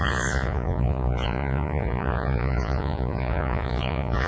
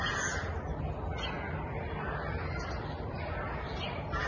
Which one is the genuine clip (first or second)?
second